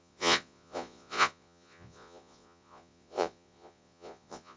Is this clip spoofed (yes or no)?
yes